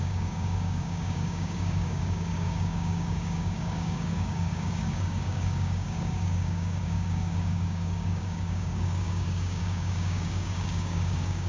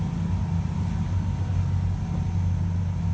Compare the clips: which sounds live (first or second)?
second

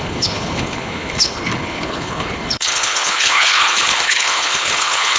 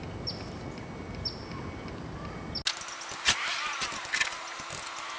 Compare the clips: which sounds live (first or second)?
second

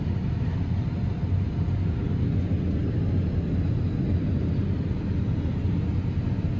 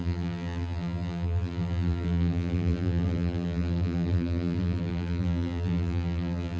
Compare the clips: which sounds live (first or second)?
first